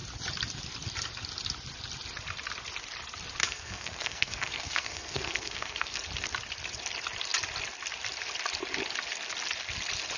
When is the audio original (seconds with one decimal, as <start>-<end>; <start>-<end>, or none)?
0.0-3.4; 6.0-10.2